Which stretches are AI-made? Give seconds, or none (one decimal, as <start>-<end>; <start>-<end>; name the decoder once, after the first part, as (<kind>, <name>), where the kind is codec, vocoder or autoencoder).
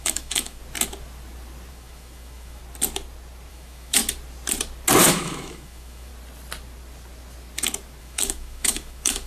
0.0-0.6 (autoencoder, DAC-VAE); 1.7-2.6; 3.5-4.0; 5.0-6.1; 8.0-9.3